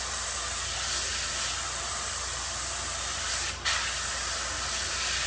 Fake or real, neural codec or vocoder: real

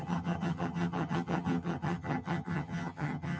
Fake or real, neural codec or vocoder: fake, vocoder, HiFi-GAN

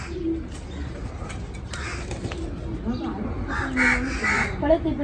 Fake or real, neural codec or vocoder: real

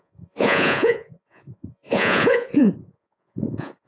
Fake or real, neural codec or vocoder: fake, vocoder, Vocos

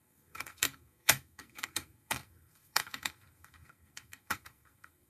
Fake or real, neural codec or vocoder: fake, codec, SNAC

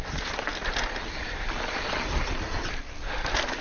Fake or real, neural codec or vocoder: real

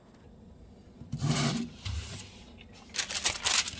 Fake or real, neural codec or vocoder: real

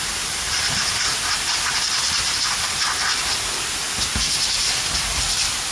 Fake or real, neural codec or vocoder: real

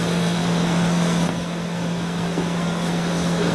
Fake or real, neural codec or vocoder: fake, codec, SNAC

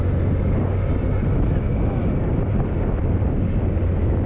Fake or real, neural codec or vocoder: real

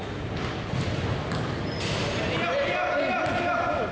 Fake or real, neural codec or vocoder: real